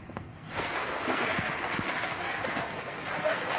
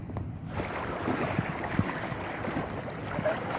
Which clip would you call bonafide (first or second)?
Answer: second